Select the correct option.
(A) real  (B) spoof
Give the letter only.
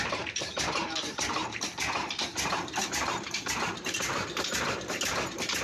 B